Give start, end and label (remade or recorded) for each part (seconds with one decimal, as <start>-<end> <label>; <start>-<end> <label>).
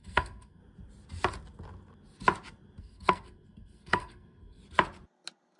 0.0-0.6 remade; 0.6-2.8 recorded; 2.8-4.6 remade; 4.6-5.6 recorded